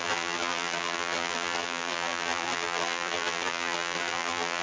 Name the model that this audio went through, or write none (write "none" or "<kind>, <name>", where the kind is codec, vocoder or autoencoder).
vocoder, BigVGAN v2